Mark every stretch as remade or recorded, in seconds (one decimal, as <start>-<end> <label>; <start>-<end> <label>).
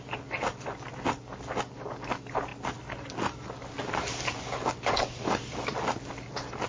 0.0-6.7 recorded